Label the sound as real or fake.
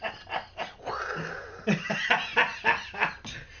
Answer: real